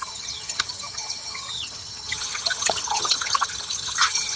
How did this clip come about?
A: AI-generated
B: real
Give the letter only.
A